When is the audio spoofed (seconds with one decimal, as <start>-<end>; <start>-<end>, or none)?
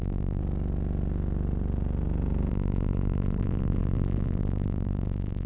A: 0.0-0.4; 2.5-5.5